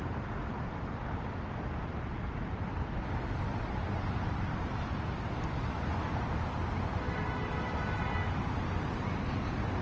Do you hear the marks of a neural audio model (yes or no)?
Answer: no